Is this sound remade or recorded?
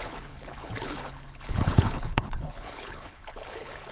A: remade